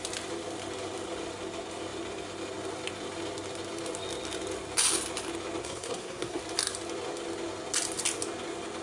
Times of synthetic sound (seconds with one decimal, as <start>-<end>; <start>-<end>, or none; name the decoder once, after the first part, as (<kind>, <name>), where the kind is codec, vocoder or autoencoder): 5.6-6.4 (codec, SNAC)